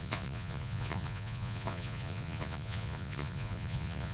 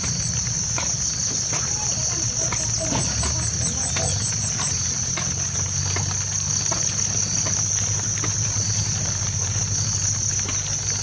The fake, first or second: first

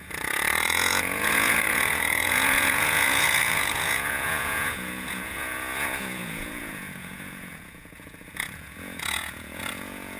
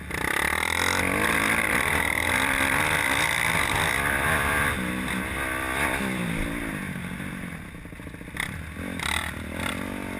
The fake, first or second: first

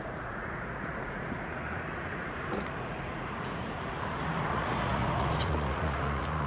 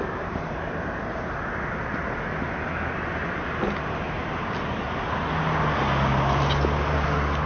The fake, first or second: first